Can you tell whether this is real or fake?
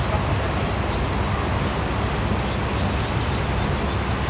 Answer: real